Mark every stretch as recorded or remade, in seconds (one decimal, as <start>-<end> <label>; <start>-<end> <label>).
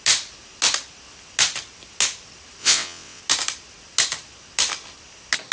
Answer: 0.0-2.6 recorded; 2.6-3.2 remade; 3.2-5.5 recorded